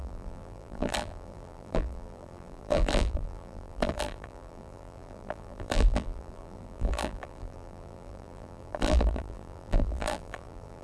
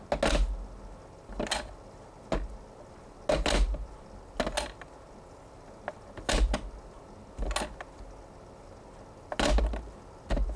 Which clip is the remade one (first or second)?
first